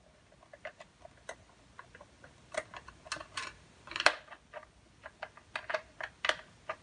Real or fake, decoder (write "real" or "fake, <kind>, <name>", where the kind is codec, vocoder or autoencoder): real